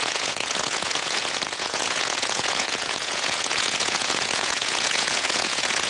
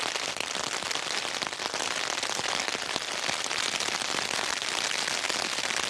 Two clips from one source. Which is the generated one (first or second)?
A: first